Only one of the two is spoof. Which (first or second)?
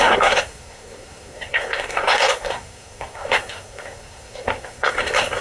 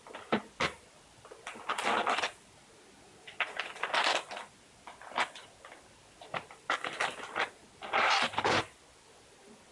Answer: first